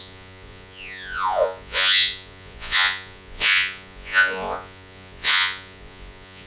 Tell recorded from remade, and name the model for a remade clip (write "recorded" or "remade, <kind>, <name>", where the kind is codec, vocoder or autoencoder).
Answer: remade, vocoder, Vocos